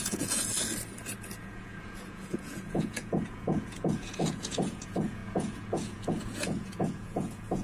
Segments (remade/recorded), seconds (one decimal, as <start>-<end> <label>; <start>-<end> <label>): 0.0-0.5 remade; 0.5-1.4 recorded; 1.4-7.6 remade